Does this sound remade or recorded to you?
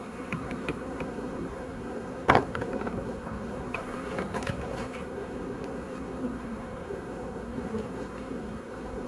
remade